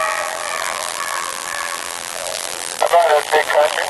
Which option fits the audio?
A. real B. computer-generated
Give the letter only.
B